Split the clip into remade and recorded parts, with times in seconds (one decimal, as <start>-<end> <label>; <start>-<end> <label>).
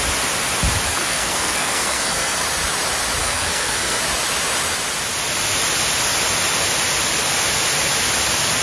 0.0-0.9 recorded; 0.9-2.4 remade; 2.4-3.2 recorded; 3.2-4.0 remade; 4.0-8.6 recorded